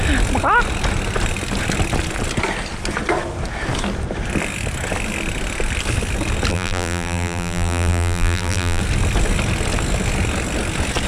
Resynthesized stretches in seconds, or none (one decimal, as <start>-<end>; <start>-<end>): 6.5-8.8